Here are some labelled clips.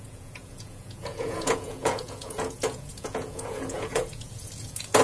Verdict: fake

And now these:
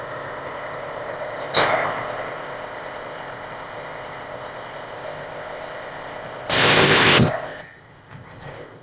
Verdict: fake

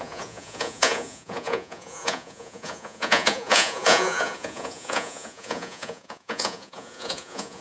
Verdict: fake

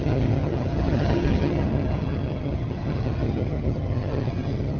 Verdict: fake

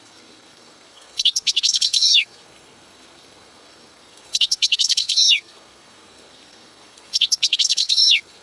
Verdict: fake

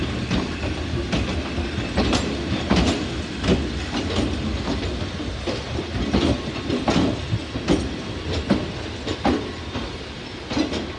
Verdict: real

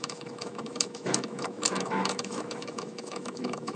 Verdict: fake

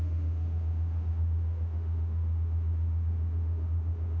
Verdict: fake